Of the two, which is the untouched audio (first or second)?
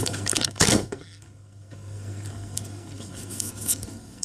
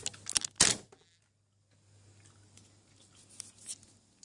second